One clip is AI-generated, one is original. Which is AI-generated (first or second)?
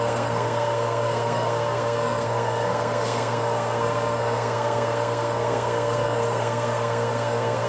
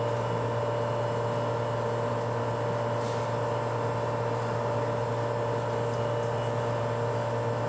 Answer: first